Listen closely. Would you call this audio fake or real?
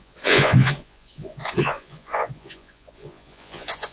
fake